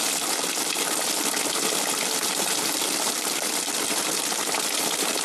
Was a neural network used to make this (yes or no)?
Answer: no